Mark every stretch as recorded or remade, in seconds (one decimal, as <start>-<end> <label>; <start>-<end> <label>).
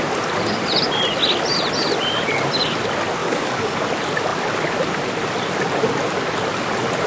0.0-3.2 recorded; 3.2-3.9 remade; 3.9-7.1 recorded